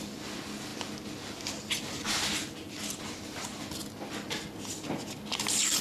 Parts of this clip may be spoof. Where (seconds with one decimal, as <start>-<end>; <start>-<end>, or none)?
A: none